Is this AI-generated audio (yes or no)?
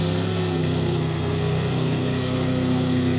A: yes